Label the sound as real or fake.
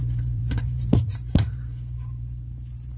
fake